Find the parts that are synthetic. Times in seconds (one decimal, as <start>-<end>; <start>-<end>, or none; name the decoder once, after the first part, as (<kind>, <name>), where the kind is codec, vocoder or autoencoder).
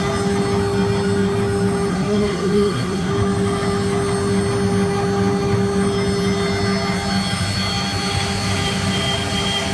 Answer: 1.9-3.1 (codec, SNAC)